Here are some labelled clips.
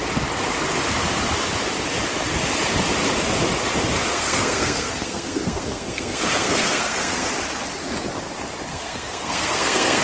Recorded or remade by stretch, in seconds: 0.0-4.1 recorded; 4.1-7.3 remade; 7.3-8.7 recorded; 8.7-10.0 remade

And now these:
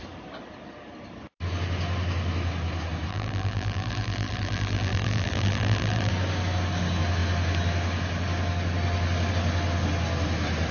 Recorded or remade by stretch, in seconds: 0.0-3.1 recorded; 3.1-6.1 remade; 6.1-10.7 recorded

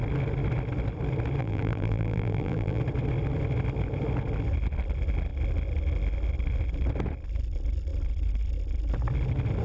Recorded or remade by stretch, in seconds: 0.0-1.4 recorded; 1.4-2.8 remade; 2.8-9.6 recorded

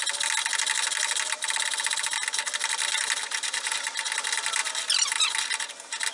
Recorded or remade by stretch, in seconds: 0.0-6.1 recorded

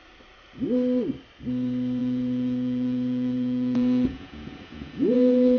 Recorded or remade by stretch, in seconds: 0.0-2.0 recorded; 2.0-5.6 remade